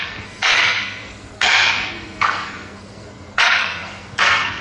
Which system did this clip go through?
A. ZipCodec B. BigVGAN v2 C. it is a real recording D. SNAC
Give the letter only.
D